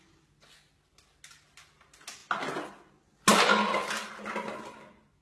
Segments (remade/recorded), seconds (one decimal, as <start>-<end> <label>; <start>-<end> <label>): 0.0-5.2 recorded